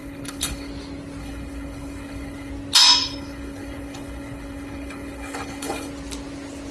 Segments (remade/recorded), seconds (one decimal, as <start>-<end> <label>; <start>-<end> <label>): 0.0-0.7 remade; 0.7-1.2 recorded; 1.2-2.5 remade; 2.5-3.0 recorded; 3.0-5.9 remade; 5.9-6.7 recorded